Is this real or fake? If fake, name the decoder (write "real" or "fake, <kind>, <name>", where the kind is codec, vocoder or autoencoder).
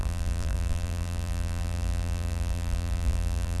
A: fake, vocoder, BigVGAN v2